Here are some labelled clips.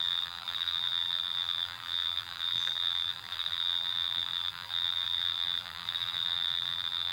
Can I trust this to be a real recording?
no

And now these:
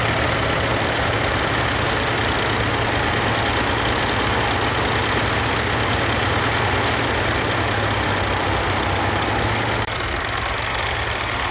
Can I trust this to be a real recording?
yes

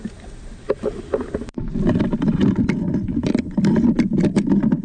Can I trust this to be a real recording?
yes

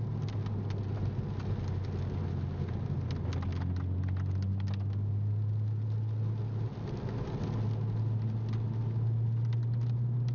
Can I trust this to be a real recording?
yes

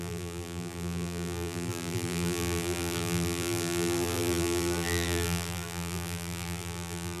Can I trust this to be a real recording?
no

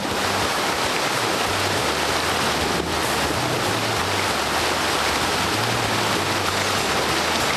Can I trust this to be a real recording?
yes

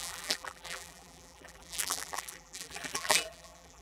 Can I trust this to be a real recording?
no